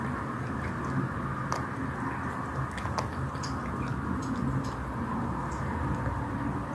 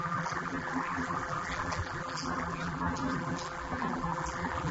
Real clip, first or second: first